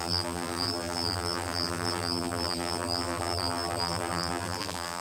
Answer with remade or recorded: remade